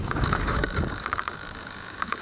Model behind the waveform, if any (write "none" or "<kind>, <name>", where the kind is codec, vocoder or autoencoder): codec, DAC